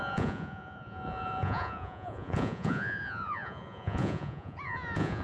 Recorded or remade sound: remade